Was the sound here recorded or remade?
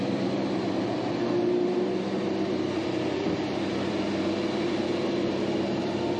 remade